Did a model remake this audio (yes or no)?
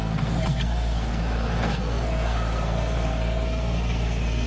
yes